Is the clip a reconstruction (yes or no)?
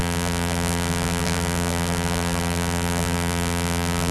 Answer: yes